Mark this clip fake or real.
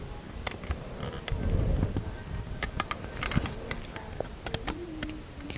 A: real